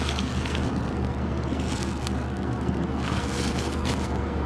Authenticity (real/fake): fake